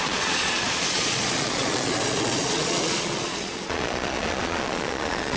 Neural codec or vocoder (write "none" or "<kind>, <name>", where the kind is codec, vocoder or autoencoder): vocoder, Vocos